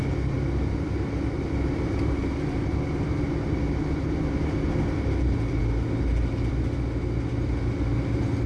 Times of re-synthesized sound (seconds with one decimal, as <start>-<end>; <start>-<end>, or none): none